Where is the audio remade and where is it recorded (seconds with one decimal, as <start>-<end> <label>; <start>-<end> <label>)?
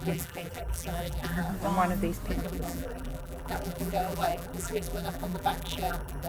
0.0-1.5 remade; 1.5-2.3 recorded; 2.3-6.3 remade